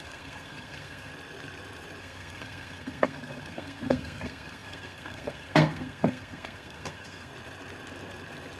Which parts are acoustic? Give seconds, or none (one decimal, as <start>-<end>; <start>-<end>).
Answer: 1.1-2.0; 7.3-8.6